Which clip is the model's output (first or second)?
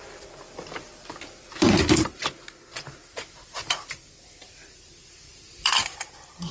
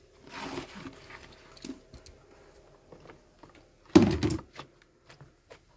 first